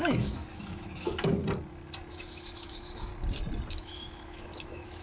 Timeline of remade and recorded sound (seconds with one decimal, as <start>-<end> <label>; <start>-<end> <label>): 0.0-1.4 remade; 1.4-2.1 recorded; 2.1-3.1 remade; 3.1-3.7 recorded; 3.7-5.0 remade